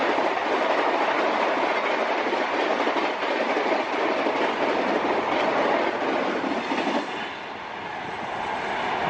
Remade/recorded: recorded